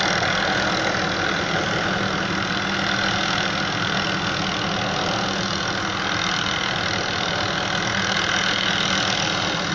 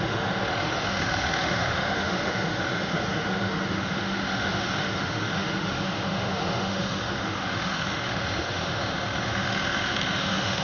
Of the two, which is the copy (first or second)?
second